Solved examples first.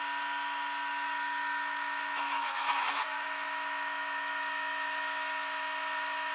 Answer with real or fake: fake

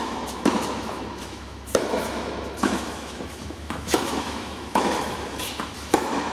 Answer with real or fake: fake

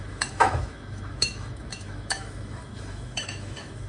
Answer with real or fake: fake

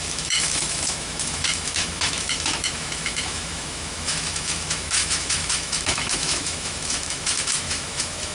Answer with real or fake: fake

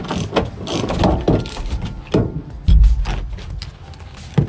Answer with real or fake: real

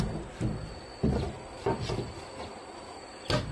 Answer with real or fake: real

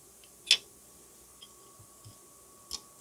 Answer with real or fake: real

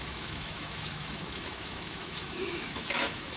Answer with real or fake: fake